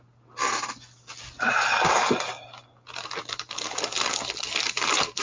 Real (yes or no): yes